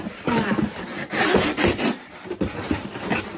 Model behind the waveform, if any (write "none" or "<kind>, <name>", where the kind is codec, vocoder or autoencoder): vocoder, BigVGAN v2